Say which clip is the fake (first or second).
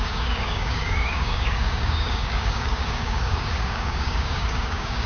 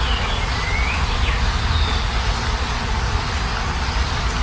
first